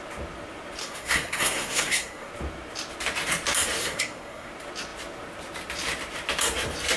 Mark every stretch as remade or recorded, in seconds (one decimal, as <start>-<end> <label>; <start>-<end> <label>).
0.0-0.8 recorded; 0.8-2.3 remade; 2.3-3.8 recorded; 3.8-4.5 remade; 4.5-7.0 recorded